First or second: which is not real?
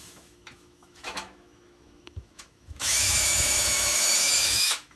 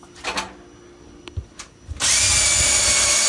first